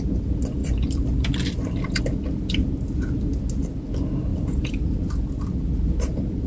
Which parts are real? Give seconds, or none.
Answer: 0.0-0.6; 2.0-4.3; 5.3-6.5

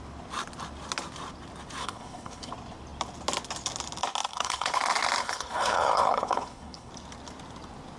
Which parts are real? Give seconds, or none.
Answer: 0.0-1.8; 2.5-4.3; 4.8-5.2; 6.9-8.0

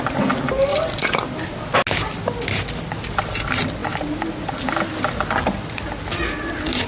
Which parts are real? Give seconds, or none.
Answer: 0.0-6.9

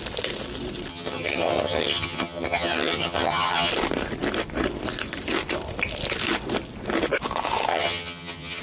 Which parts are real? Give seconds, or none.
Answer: 0.0-0.9; 3.7-7.7

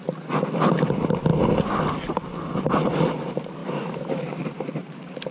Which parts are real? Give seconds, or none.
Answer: 0.0-3.6; 4.2-5.3

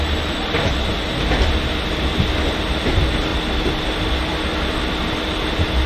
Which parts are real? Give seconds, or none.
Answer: 0.0-5.9